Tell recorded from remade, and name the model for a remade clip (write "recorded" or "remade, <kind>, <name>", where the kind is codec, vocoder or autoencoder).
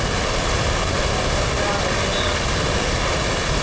recorded